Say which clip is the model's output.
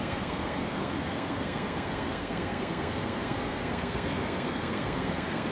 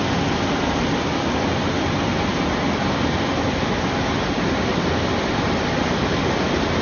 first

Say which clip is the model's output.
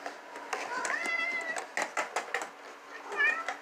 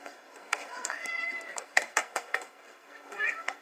second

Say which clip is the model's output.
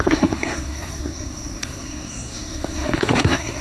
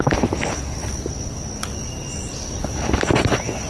first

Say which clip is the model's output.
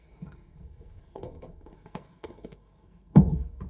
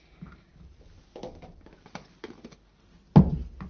first